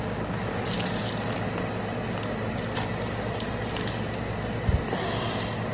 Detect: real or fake real